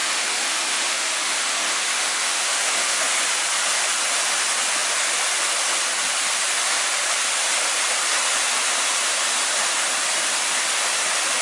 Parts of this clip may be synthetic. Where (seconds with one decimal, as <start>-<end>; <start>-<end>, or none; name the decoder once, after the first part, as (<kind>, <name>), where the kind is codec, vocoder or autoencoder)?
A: 0.0-3.0 (autoencoder, DAC-VAE)